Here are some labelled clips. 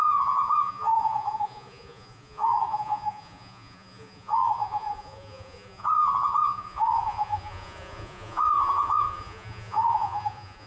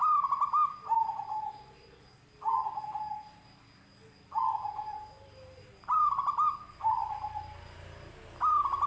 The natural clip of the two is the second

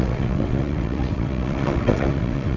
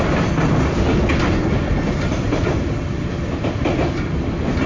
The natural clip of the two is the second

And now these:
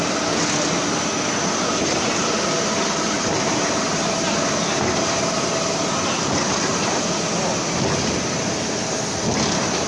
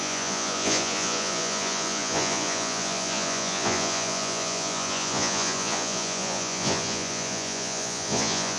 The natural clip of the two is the first